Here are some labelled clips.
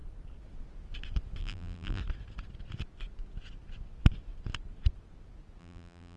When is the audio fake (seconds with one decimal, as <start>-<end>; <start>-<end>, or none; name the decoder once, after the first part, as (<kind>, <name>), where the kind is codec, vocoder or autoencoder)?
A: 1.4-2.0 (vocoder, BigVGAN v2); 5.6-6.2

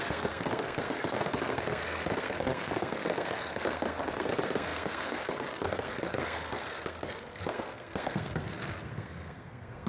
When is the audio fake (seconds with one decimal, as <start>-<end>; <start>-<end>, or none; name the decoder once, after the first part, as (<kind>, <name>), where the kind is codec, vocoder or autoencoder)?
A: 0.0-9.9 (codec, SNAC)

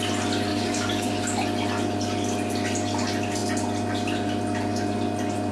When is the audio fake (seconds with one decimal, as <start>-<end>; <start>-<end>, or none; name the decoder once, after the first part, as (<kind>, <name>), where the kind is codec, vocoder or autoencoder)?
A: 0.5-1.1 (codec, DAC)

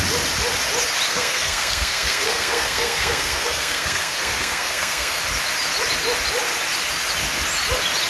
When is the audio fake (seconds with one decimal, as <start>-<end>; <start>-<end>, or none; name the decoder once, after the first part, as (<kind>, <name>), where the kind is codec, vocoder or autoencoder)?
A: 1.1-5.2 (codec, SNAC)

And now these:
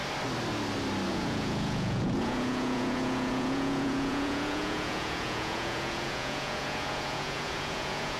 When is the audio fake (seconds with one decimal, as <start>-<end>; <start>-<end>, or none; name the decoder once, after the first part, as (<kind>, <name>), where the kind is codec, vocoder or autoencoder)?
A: 1.1-8.2 (vocoder, Vocos)

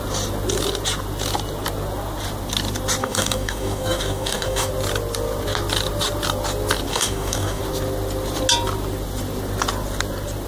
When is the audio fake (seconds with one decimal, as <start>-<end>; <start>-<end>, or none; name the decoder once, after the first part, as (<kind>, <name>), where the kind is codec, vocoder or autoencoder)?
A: 3.0-4.7 (codec, DAC); 6.9-7.6